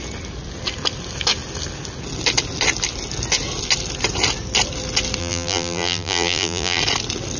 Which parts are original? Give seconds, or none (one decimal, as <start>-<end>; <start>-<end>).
0.0-5.2; 6.8-7.4